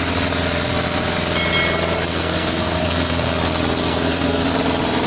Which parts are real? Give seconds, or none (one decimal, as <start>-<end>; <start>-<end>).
0.0-2.1; 3.4-3.8; 4.4-5.1